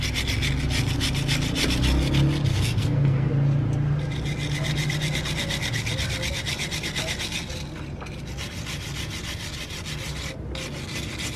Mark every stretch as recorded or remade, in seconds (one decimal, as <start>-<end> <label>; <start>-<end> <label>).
0.0-2.5 recorded; 2.5-3.3 remade; 3.3-11.4 recorded